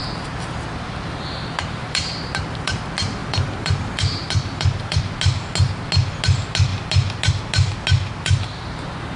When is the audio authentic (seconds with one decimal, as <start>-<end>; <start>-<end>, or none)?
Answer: 0.0-1.8; 2.8-3.2; 5.0-9.2